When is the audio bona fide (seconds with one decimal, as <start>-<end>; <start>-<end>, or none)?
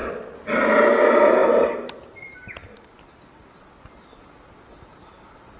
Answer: 0.0-5.6